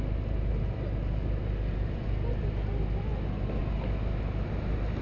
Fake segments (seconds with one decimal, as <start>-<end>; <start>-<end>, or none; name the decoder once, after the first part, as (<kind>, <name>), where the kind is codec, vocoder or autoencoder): none

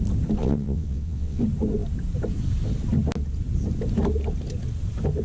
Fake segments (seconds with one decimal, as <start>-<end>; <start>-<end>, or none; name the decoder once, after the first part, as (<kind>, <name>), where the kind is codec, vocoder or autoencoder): 0.4-1.4 (vocoder, WaveNeXt)

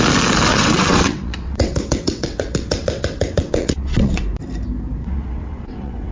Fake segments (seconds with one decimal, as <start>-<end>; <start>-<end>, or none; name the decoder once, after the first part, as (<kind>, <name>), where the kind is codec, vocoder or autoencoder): 0.5-4.2 (vocoder, WaveNeXt); 5.0-6.1

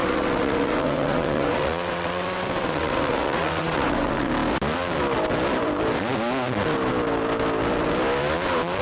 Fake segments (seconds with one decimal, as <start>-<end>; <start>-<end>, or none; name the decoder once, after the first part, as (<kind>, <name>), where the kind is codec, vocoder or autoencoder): 0.0-4.3 (vocoder, WaveNeXt)

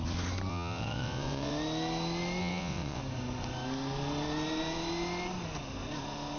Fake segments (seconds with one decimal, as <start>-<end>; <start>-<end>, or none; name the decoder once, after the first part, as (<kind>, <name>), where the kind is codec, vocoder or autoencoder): 0.5-1.5 (vocoder, WaveNeXt); 2.4-3.0

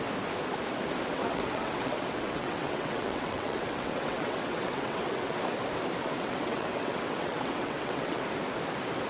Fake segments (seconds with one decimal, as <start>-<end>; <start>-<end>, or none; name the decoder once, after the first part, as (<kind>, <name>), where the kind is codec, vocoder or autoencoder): 1.2-5.4 (vocoder, WaveNeXt); 6.0-8.2